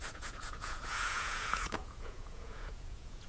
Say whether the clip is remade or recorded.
remade